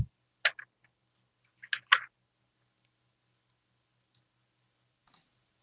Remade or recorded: recorded